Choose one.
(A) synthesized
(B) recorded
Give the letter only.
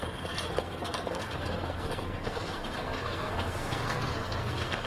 A